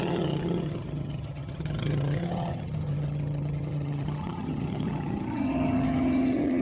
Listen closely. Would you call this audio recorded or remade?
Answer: remade